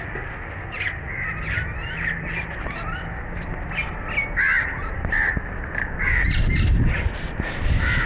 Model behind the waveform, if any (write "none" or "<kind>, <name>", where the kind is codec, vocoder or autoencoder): none